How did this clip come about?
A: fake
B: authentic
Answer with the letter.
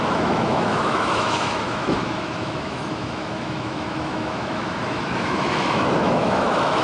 A